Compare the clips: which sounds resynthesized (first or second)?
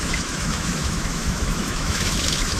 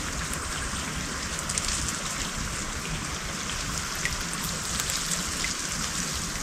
first